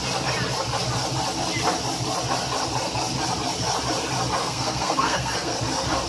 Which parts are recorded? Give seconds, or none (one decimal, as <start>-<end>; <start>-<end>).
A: 0.0-4.4; 5.6-6.1